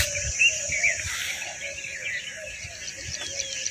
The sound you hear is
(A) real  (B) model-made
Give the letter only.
A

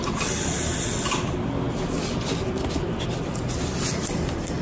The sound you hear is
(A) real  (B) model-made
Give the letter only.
A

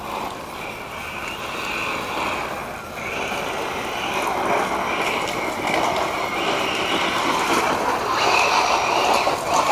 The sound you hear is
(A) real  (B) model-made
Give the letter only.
A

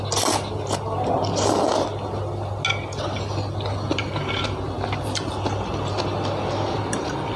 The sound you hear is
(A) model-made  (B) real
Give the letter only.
B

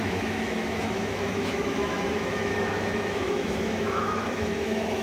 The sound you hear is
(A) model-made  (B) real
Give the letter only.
A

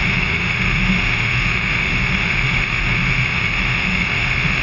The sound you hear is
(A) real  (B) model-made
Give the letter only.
B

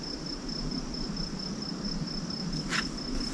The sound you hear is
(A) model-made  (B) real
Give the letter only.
B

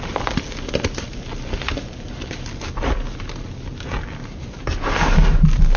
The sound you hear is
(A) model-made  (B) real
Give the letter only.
B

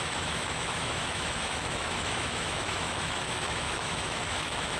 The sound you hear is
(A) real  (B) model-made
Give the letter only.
B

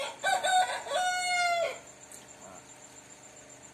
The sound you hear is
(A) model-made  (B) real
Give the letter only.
B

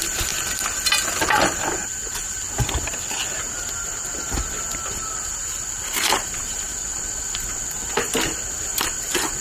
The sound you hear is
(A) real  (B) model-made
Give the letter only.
A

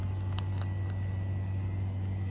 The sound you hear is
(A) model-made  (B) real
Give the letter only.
B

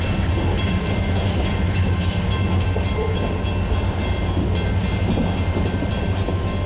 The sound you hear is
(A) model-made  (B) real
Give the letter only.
B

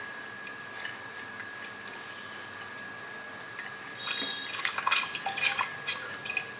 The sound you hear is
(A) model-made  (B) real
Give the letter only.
B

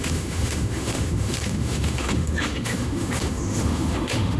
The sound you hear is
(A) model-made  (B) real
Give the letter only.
A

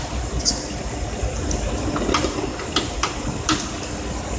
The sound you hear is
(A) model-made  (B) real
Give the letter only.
B